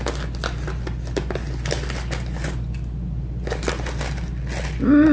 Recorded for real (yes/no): yes